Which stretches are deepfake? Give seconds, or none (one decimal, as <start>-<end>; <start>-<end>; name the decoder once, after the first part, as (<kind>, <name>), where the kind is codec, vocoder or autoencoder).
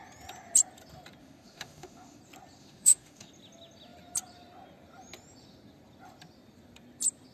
1.2-2.2 (autoencoder, DAC-VAE); 2.6-3.3